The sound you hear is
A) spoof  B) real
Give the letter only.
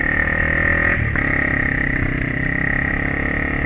A